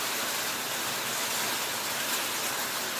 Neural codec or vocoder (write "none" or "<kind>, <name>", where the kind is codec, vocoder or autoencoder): none